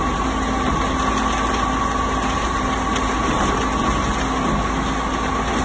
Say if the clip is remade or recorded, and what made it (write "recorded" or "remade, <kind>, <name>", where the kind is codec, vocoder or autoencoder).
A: recorded